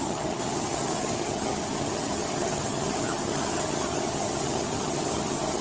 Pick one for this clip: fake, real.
fake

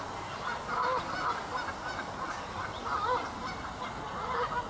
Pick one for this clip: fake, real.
real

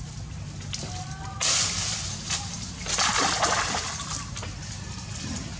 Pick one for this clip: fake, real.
real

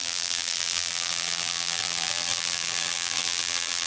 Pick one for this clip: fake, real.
fake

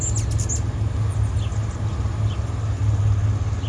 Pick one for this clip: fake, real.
real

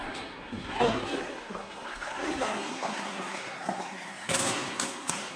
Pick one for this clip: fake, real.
fake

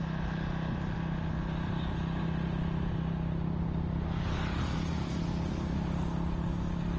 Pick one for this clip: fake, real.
real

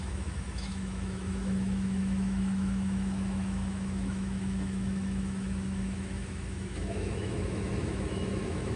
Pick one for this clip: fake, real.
fake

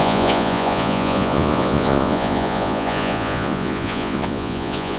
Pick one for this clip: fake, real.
fake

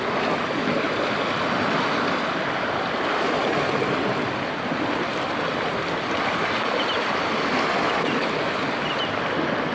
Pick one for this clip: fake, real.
real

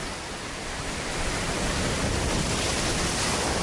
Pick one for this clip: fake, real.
real